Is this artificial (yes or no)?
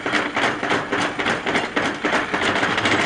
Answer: no